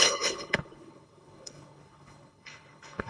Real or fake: fake